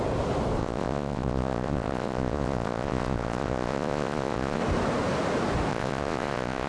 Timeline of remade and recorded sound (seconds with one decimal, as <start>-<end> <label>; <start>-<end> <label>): 0.0-0.6 recorded; 0.6-4.6 remade; 4.6-5.7 recorded; 5.7-6.7 remade